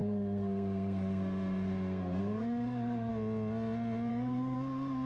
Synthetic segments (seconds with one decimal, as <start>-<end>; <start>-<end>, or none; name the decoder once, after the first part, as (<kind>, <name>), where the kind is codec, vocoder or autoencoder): 0.0-3.1 (codec, SNAC); 4.1-5.1